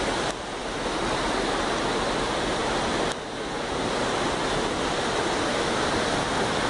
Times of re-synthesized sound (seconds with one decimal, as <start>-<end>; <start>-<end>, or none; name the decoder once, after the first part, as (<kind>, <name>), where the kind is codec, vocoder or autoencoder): none